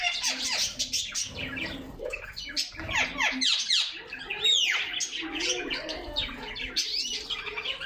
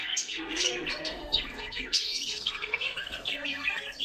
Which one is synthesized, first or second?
second